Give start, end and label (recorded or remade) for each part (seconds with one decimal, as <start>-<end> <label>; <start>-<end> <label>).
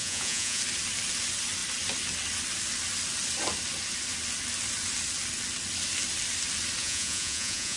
0.0-0.6 remade; 0.6-6.8 recorded; 6.8-7.8 remade